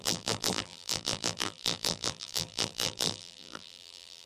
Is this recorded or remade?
remade